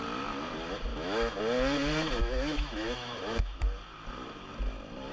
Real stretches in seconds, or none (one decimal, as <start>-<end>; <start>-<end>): 0.0-0.9; 1.4-2.2; 3.6-5.1